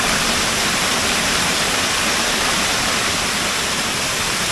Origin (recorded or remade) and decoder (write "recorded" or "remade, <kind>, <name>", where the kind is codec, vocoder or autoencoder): recorded